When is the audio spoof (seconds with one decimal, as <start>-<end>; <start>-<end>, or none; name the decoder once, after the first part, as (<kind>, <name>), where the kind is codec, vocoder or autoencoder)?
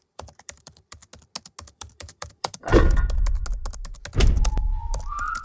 0.0-1.0 (vocoder, BigVGAN v2); 1.7-2.7; 4.2-5.4